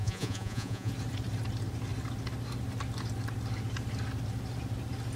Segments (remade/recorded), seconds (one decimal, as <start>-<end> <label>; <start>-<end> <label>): 0.0-0.9 remade; 0.9-5.2 recorded